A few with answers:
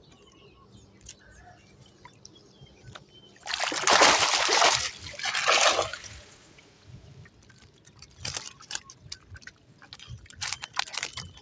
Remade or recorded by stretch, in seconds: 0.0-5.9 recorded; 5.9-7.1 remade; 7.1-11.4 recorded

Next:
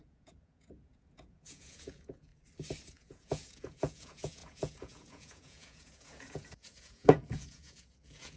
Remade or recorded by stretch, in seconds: 0.0-2.3 remade; 2.3-2.9 recorded; 2.9-8.4 remade

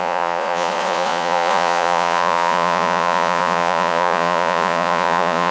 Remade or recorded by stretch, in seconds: 0.0-5.5 remade

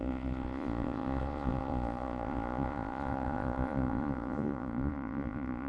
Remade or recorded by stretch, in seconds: 0.0-5.7 remade

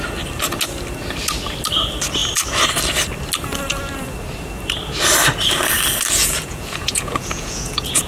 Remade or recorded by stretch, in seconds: 0.0-6.2 recorded; 6.2-8.1 remade

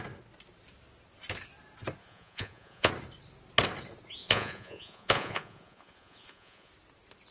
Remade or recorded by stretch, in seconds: 0.0-2.0 recorded; 2.0-2.9 remade; 2.9-4.2 recorded; 4.2-6.7 remade; 6.7-7.3 recorded

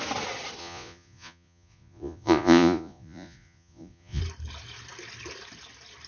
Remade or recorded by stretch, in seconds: 0.0-0.6 recorded; 0.6-4.2 remade; 4.2-6.1 recorded

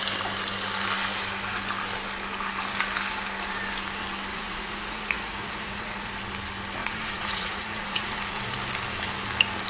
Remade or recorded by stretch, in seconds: 0.0-4.3 recorded; 4.3-6.1 remade; 6.1-6.8 recorded; 6.8-8.4 remade; 8.4-9.7 recorded